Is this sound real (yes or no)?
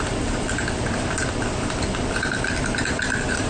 yes